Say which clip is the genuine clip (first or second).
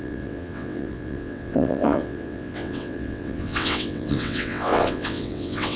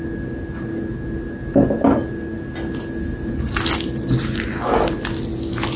second